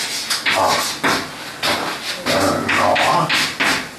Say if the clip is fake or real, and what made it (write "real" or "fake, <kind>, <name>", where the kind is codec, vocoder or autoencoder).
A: real